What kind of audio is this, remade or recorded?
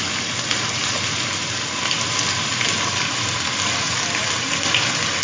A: recorded